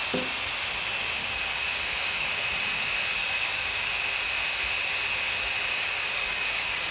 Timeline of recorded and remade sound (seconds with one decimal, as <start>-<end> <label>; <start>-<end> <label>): 0.0-1.2 recorded; 1.2-2.4 remade; 2.4-3.2 recorded; 3.2-3.9 remade; 3.9-5.7 recorded; 5.7-6.9 remade